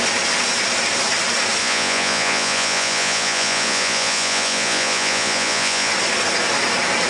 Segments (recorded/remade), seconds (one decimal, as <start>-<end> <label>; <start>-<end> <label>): 0.0-1.6 recorded; 1.6-5.9 remade; 5.9-7.1 recorded